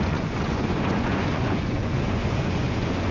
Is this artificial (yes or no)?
yes